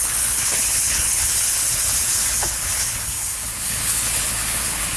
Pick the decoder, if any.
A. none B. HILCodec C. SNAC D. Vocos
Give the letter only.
B